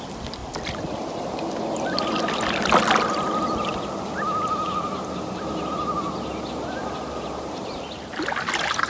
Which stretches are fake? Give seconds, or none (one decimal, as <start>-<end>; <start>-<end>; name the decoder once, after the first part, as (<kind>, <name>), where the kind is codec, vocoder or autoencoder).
3.7-5.8 (vocoder, BigVGAN v2)